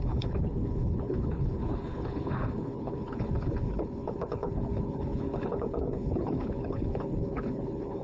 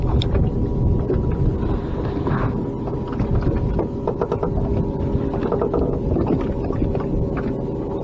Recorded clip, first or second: second